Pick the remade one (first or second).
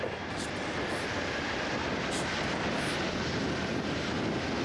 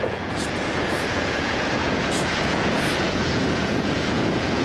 second